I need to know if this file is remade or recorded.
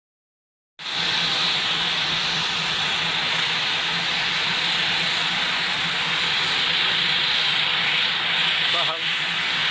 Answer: recorded